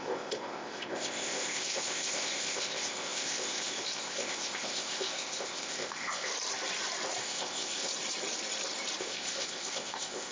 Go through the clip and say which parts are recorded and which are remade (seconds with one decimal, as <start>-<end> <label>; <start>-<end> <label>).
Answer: 0.0-6.3 remade; 6.3-7.2 recorded; 7.2-7.9 remade; 7.9-9.0 recorded; 9.0-10.3 remade